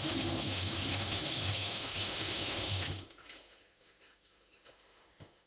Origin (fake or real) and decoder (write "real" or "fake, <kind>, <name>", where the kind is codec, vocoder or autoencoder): fake, autoencoder, DAC-VAE